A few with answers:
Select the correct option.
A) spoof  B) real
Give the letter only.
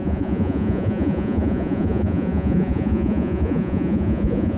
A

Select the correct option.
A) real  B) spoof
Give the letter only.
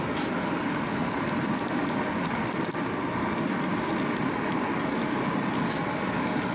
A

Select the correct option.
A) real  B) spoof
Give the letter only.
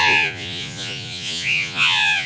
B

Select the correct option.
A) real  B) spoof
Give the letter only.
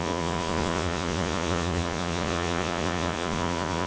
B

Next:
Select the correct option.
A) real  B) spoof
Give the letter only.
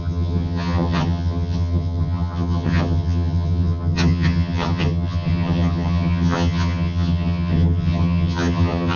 B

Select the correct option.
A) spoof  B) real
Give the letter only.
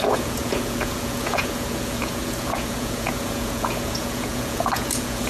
A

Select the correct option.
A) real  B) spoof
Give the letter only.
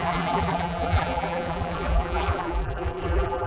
B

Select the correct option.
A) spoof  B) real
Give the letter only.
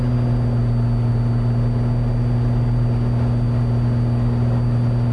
B